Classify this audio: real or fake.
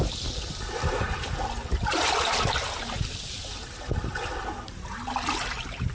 real